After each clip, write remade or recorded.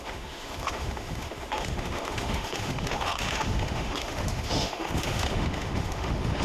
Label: remade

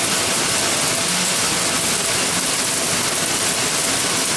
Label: recorded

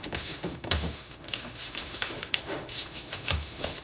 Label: remade